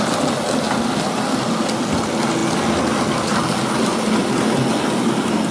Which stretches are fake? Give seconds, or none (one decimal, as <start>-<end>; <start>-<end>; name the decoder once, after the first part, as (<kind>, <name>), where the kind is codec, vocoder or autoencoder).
none

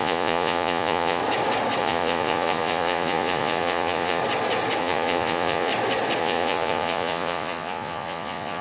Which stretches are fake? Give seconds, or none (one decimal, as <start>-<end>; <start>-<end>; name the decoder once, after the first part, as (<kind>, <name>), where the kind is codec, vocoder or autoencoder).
0.0-1.2 (vocoder, Vocos); 1.8-4.2; 4.8-5.7; 6.2-8.6

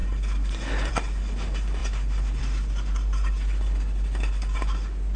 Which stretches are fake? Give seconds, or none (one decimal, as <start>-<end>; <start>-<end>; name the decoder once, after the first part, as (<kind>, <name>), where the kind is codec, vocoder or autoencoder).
none

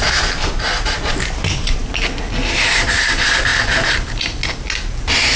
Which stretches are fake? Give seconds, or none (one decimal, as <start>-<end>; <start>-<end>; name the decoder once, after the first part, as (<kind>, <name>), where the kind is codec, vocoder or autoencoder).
none

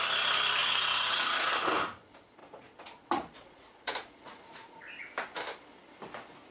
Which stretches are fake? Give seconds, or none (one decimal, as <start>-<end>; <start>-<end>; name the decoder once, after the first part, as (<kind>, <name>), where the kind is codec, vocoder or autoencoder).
0.6-1.5 (vocoder, Vocos); 2.4-4.8

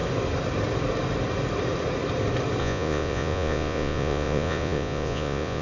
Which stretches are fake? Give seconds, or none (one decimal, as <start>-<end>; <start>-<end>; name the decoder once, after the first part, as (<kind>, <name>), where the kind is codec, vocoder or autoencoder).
2.6-5.6 (vocoder, Vocos)

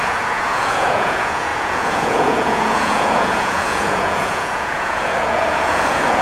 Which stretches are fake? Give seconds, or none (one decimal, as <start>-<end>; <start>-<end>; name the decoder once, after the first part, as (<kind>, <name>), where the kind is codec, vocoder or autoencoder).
0.0-6.2 (vocoder, Vocos)